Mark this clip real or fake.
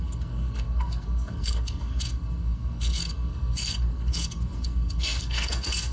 fake